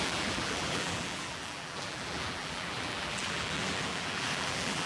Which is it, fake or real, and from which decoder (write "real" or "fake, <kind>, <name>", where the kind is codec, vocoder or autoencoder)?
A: fake, vocoder, BigVGAN v2